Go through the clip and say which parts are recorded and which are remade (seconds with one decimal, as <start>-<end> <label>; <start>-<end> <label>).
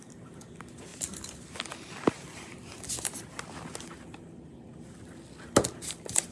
0.0-6.3 recorded